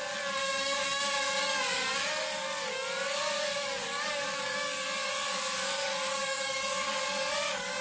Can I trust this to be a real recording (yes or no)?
no